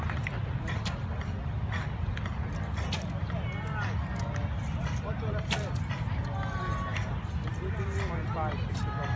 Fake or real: real